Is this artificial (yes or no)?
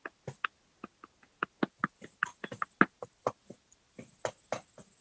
no